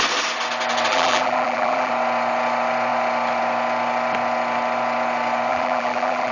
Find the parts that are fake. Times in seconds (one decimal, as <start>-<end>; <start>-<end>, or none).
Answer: 0.9-1.9; 5.5-6.3